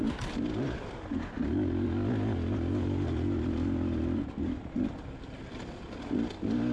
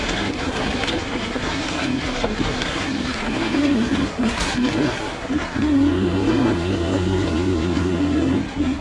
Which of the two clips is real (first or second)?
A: first